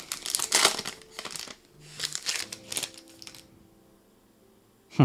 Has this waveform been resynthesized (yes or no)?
no